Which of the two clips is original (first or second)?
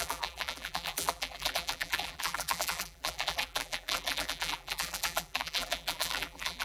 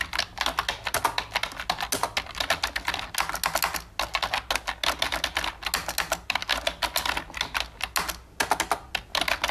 second